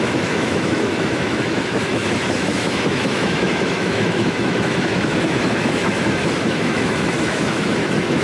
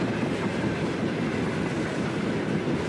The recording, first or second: second